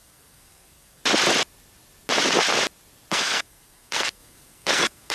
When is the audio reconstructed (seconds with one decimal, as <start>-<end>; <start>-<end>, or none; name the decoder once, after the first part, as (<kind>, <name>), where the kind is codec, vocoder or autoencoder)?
0.0-1.0 (codec, SNAC); 3.1-5.1